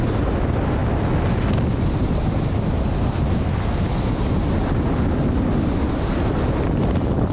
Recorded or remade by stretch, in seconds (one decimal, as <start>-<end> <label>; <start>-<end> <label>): 0.0-7.3 recorded